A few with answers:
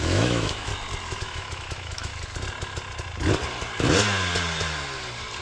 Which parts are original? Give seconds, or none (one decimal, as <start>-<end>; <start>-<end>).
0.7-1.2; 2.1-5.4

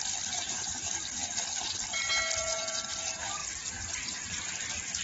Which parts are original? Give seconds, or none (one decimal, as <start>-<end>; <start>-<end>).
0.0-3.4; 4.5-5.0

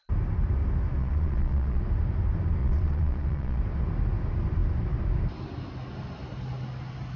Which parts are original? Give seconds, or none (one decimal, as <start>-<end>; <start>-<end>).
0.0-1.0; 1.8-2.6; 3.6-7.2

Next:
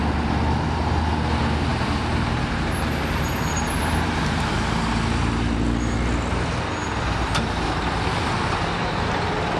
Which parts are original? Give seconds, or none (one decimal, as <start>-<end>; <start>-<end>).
0.0-1.7; 4.9-9.6

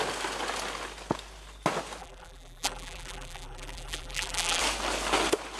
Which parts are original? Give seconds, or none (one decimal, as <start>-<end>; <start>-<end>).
0.0-2.0; 4.6-5.6

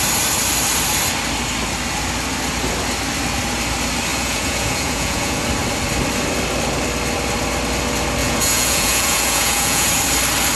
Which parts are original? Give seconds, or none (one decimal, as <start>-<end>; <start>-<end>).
0.0-4.1; 5.4-8.2; 9.9-10.5